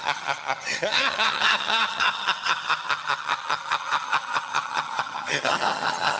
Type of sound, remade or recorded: remade